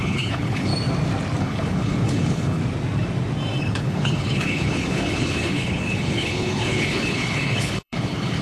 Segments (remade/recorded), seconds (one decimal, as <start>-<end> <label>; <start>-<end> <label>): 0.0-0.7 remade; 0.7-1.4 recorded; 1.4-2.6 remade; 2.6-3.6 recorded; 3.6-8.4 remade